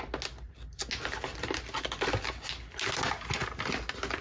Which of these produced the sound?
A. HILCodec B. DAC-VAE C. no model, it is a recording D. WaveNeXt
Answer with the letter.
C